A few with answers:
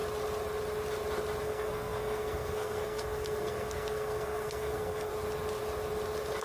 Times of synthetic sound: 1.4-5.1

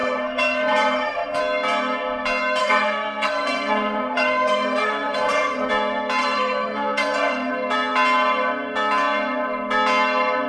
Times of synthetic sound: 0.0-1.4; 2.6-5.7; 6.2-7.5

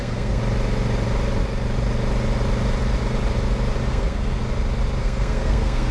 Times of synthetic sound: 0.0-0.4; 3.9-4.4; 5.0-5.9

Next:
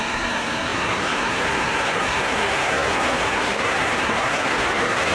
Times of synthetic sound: 0.0-5.1

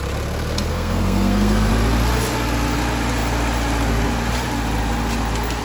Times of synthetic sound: 0.7-1.7

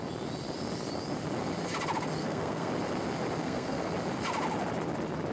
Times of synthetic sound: 2.2-2.7; 3.4-3.9

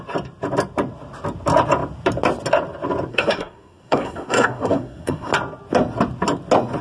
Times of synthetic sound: 3.1-5.3

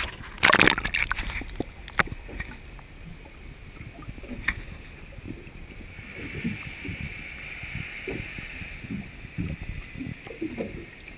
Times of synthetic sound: none